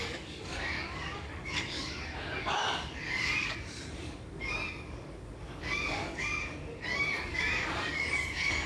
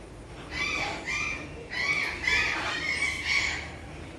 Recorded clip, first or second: second